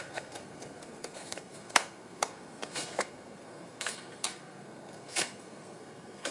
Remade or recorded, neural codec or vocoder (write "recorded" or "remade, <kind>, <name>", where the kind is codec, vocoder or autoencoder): remade, codec, SNAC